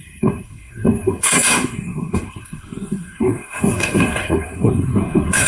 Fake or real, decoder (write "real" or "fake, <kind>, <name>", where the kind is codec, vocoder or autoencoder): fake, codec, SNAC